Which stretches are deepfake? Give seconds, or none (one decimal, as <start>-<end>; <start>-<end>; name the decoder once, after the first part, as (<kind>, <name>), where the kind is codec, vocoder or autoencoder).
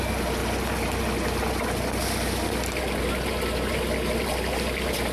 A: none